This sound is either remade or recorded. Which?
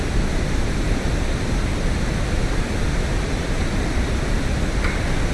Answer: recorded